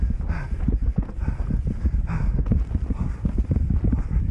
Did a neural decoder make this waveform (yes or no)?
no